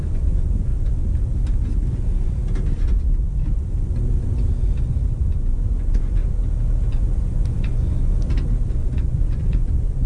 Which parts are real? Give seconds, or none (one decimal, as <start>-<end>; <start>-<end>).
0.7-5.2; 6.2-6.9; 8.1-8.9